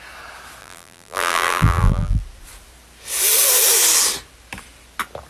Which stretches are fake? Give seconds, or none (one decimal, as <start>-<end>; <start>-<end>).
0.6-2.2